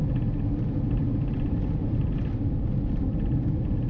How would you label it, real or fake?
fake